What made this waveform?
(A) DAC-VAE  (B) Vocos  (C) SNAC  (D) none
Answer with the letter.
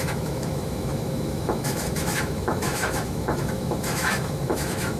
A